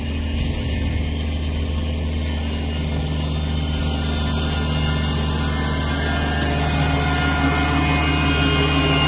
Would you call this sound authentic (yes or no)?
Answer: yes